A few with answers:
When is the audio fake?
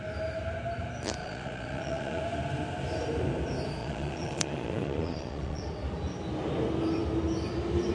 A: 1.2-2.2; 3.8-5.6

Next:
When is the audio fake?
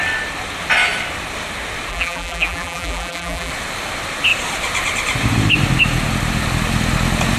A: 1.9-3.5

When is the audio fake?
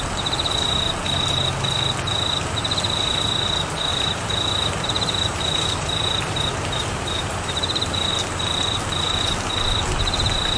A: 3.9-8.1